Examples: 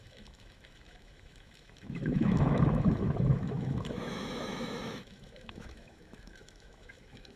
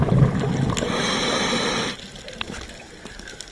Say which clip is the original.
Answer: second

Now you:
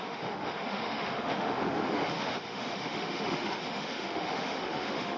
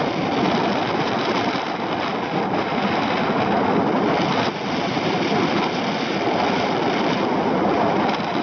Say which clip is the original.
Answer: second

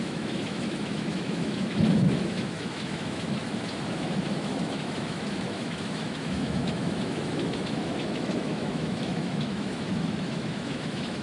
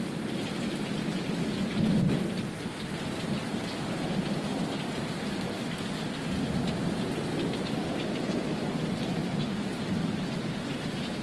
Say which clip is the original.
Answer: second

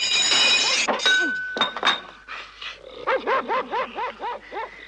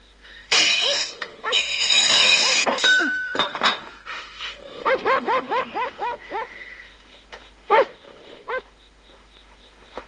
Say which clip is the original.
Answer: first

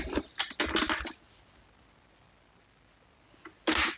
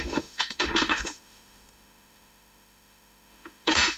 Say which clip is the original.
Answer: first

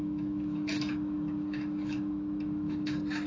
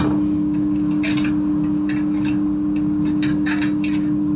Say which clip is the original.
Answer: second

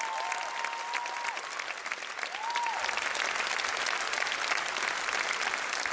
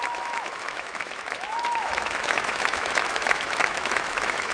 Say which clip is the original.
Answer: first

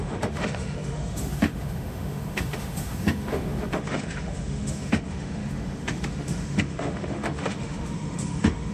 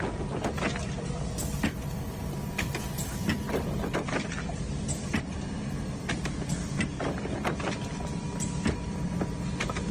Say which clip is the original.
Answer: second